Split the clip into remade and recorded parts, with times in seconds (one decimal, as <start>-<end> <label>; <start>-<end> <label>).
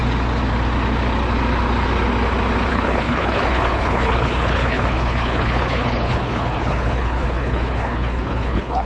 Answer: 0.0-2.7 recorded; 2.7-8.9 remade